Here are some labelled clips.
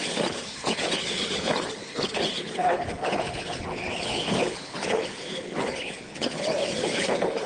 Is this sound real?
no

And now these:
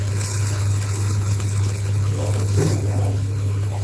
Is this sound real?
no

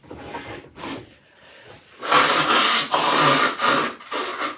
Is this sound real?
yes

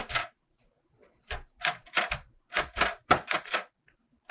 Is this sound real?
yes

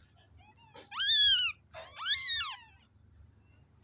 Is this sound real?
yes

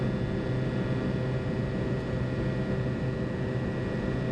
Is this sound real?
yes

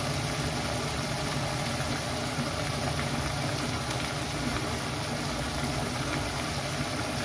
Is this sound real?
yes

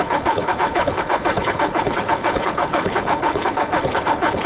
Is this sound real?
no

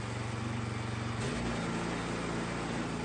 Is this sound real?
yes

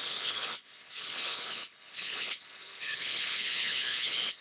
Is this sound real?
no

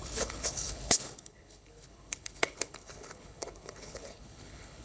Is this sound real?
no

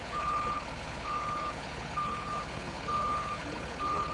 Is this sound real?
no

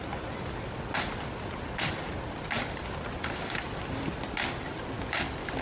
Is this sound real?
yes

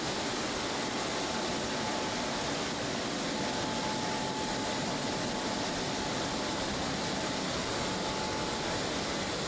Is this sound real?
yes